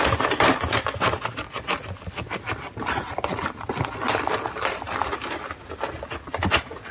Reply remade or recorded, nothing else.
recorded